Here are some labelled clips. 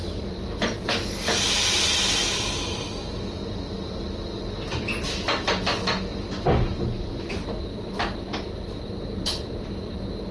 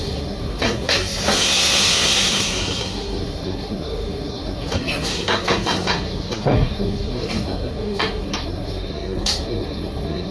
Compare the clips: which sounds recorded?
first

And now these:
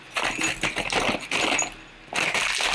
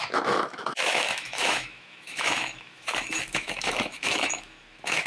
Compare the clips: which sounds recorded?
first